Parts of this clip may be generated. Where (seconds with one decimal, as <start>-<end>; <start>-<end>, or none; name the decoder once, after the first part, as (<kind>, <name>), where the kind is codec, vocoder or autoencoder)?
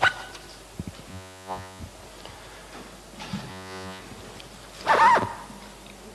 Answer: 1.1-1.8 (vocoder, Vocos); 3.5-4.0